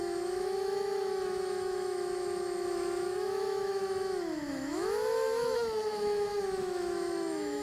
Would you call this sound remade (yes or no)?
yes